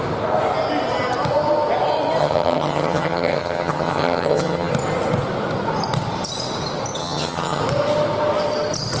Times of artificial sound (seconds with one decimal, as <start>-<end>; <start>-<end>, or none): 2.2-4.7; 7.0-7.6